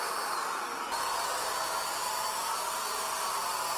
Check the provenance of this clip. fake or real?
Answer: real